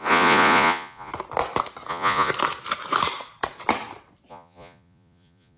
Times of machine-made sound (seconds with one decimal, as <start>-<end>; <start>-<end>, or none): 0.0-1.1; 1.9-2.3; 4.3-5.6